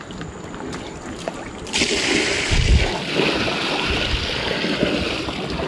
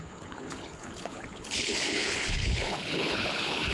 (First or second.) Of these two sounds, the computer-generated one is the second